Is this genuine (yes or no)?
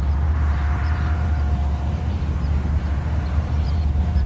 no